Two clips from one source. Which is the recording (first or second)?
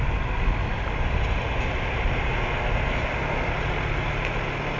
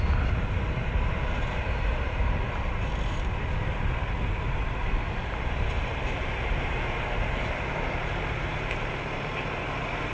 first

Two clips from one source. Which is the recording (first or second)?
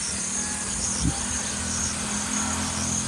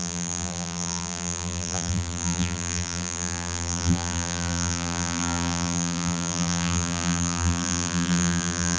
first